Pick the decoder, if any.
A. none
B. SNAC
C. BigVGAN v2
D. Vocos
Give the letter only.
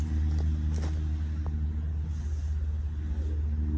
A